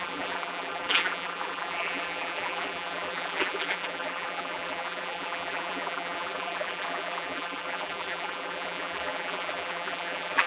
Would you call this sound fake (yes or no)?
yes